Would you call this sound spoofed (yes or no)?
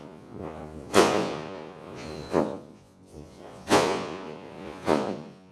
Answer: yes